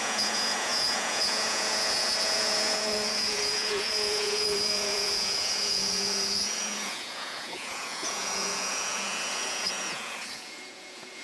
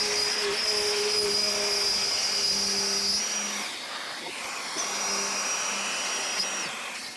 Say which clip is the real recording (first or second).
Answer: second